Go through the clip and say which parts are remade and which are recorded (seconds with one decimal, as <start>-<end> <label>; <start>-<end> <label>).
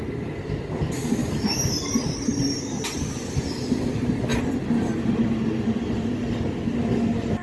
0.0-1.2 recorded; 1.2-3.4 remade; 3.4-7.4 recorded